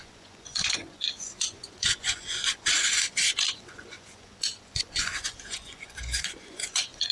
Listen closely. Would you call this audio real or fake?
fake